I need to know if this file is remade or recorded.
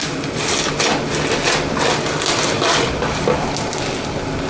recorded